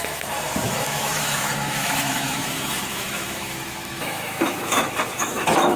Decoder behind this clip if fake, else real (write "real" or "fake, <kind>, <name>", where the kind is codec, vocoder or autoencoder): fake, autoencoder, DAC-VAE